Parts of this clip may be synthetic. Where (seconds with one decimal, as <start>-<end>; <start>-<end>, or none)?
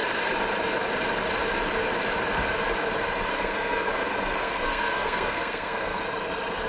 3.3-3.9; 4.4-6.0